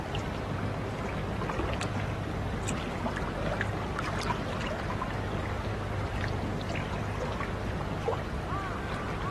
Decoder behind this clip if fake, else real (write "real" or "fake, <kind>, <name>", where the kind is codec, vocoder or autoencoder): real